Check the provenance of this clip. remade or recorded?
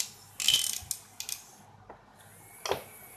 recorded